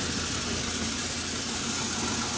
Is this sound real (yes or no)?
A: yes